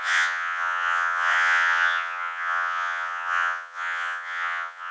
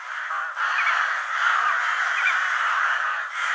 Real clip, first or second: second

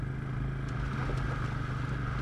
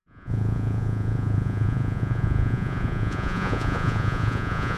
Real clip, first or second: first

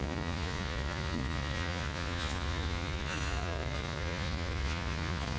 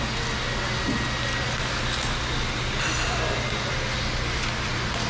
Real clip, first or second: second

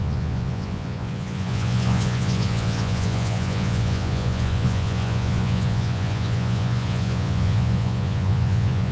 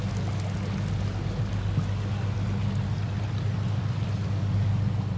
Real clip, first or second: second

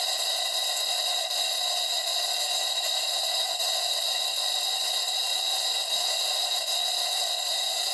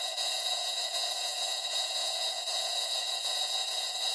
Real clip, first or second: first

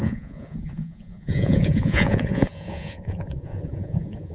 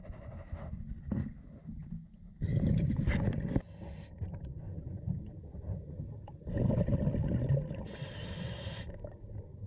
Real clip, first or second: second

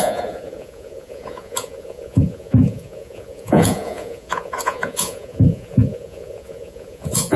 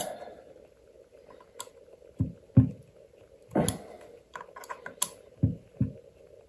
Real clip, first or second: second